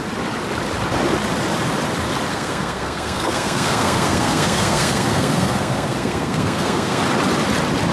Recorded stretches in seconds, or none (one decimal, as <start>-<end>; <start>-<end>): 0.0-2.3; 7.0-7.9